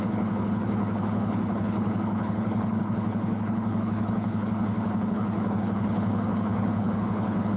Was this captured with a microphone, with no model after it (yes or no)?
no